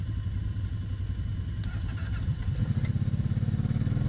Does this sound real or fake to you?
real